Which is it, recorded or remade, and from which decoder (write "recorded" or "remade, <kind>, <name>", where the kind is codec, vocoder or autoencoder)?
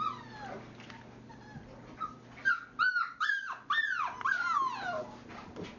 recorded